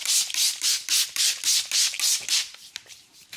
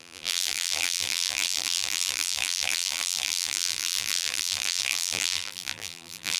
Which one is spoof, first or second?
second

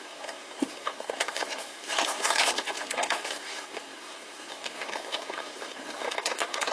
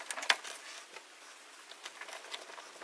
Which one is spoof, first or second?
first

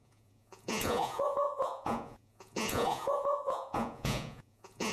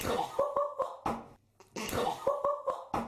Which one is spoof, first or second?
first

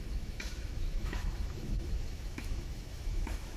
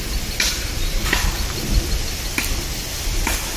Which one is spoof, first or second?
first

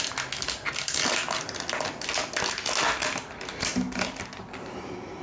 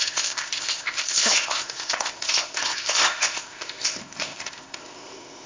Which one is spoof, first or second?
second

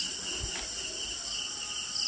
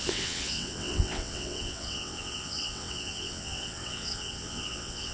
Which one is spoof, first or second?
second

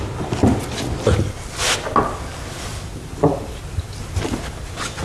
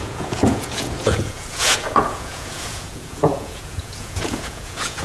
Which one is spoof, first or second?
second